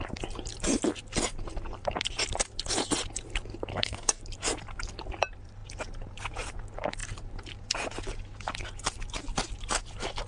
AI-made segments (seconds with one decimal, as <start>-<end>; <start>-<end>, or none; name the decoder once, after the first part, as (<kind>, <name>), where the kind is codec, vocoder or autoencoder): 3.7-4.2 (codec, SNAC)